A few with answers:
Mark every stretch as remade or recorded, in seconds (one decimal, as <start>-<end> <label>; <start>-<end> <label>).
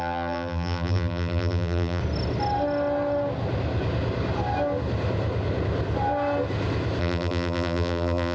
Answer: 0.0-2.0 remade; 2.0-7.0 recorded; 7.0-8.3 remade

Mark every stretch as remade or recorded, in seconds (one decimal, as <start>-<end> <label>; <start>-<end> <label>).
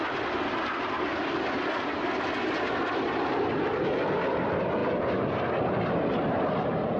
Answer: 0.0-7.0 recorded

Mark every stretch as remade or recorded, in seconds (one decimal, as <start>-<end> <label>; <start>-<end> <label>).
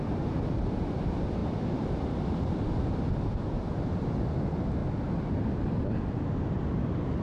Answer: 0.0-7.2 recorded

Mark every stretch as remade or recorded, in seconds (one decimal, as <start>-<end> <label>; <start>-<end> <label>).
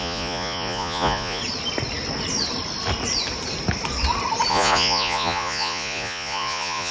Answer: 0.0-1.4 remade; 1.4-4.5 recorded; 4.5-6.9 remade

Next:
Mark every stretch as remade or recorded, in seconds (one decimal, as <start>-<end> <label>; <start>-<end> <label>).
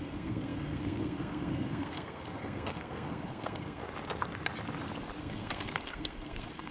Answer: 0.0-3.8 remade; 3.8-5.2 recorded; 5.2-6.7 remade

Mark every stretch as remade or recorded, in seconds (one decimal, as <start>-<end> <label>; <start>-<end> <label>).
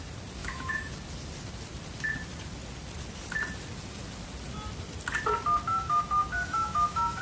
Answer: 0.0-0.4 recorded; 0.4-0.9 remade; 0.9-5.7 recorded; 5.7-7.2 remade